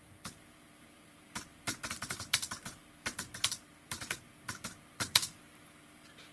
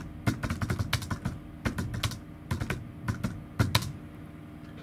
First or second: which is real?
second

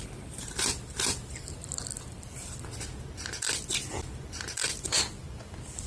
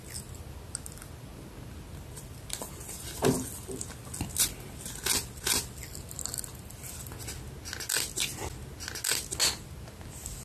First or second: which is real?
second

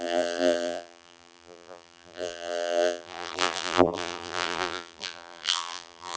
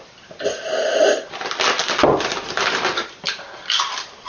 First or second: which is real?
second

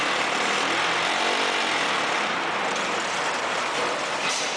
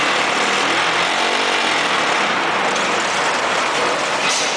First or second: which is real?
second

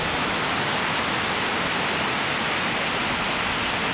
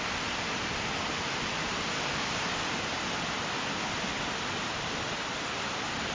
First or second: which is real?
first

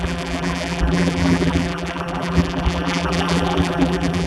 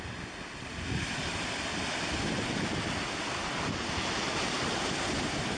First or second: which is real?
second